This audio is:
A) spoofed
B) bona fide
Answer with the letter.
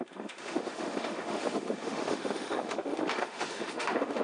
A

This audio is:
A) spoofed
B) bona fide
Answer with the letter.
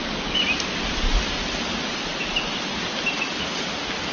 B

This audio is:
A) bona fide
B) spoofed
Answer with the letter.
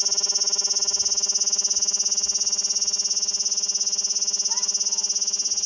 A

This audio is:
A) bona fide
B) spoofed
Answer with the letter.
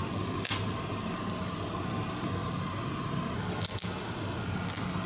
A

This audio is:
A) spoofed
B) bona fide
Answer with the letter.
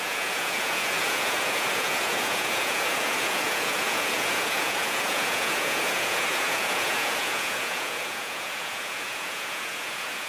A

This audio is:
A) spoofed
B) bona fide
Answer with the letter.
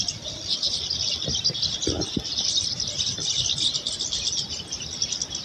B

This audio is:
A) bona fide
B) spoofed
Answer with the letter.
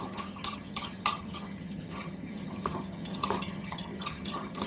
B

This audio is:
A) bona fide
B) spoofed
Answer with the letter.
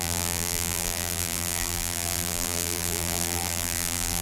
B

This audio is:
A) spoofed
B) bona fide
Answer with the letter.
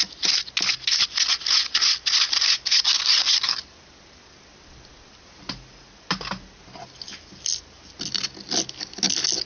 B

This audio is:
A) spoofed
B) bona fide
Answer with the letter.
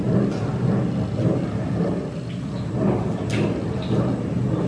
B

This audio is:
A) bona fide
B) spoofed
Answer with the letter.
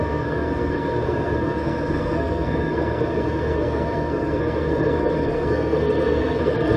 B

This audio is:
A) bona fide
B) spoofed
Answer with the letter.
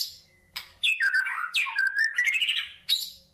B